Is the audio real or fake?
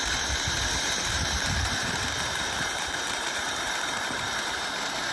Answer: fake